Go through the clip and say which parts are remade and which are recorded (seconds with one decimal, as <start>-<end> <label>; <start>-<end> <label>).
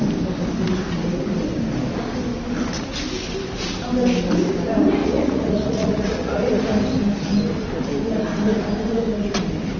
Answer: 0.0-5.0 recorded; 5.0-6.5 remade; 6.5-9.8 recorded